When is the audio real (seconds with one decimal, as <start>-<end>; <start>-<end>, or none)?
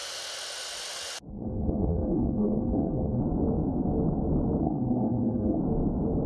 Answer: 0.0-1.3; 3.2-4.6; 5.6-6.3